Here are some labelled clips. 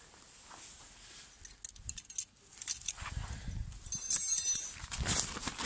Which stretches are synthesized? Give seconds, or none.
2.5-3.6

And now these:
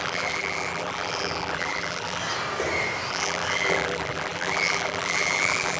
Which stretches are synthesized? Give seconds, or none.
0.0-2.2; 3.1-5.8

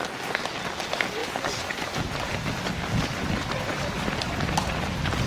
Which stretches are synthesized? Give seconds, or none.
3.7-4.5

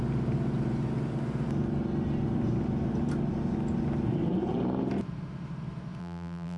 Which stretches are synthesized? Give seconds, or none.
6.0-6.6

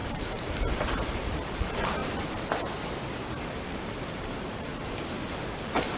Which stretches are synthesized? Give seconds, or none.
0.0-2.0; 3.4-4.7; 5.6-6.0

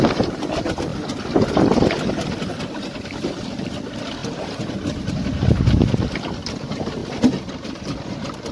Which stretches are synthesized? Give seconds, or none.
0.9-2.1; 4.2-5.1; 7.0-8.1